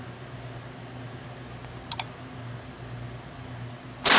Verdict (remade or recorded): recorded